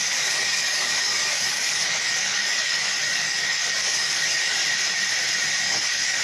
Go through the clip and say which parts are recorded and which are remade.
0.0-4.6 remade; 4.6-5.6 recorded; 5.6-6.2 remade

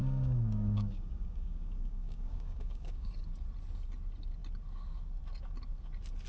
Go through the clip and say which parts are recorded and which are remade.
0.0-3.1 remade; 3.1-6.3 recorded